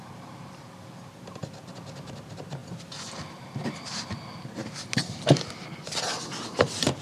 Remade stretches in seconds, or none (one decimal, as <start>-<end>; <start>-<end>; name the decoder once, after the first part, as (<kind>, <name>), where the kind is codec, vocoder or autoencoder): none